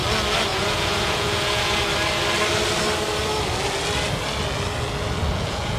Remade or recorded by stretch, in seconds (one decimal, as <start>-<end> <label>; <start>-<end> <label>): 0.0-0.5 recorded; 0.5-1.8 remade; 1.8-5.3 recorded; 5.3-5.8 remade